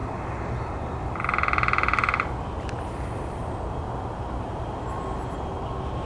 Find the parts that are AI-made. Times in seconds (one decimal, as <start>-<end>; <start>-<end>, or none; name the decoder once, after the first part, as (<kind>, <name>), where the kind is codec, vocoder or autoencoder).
none